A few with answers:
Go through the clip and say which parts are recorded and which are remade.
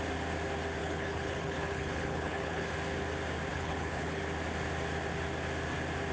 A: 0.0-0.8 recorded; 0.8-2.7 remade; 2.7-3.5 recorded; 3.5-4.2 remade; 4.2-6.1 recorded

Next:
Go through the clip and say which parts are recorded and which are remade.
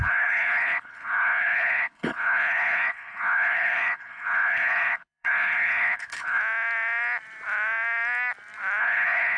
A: 0.0-6.4 remade; 6.4-8.8 recorded; 8.8-9.4 remade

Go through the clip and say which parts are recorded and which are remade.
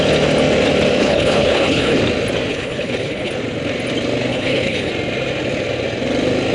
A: 0.0-1.0 recorded; 1.0-2.0 remade; 2.0-2.5 recorded; 2.5-3.3 remade; 3.3-4.3 recorded; 4.3-4.9 remade; 4.9-6.5 recorded